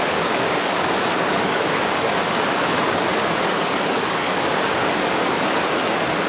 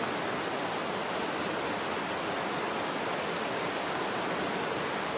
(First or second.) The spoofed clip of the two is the first